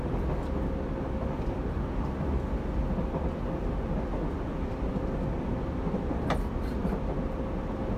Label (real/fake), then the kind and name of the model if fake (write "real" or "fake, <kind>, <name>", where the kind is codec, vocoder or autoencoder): real